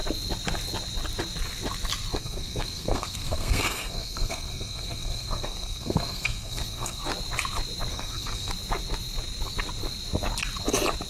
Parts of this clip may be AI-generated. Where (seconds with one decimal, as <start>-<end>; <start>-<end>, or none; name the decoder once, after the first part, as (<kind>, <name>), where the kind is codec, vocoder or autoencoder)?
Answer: 2.1-7.0 (codec, SNAC); 7.9-8.5